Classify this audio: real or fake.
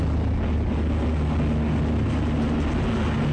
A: real